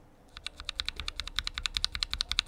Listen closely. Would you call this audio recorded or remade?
recorded